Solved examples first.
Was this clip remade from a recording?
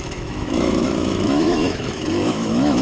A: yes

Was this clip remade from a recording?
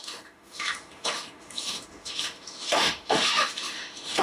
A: yes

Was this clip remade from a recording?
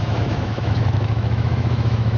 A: yes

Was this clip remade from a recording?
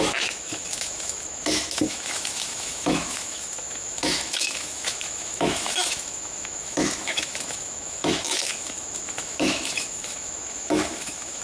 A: yes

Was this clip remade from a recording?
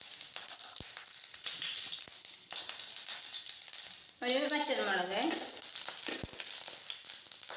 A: no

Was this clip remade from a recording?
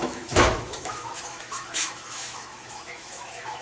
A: yes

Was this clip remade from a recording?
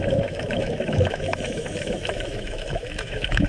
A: yes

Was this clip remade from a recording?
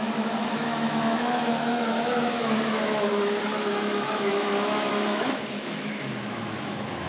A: yes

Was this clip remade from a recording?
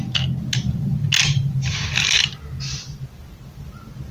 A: no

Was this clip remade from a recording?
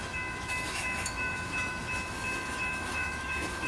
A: yes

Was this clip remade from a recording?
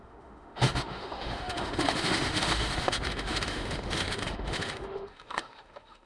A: yes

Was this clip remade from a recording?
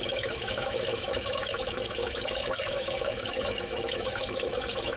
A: yes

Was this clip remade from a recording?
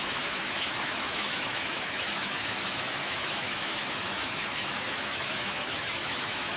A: yes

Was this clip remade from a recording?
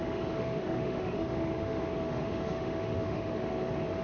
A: yes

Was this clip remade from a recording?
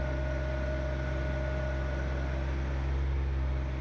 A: no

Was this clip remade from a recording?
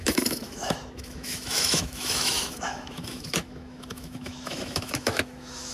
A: yes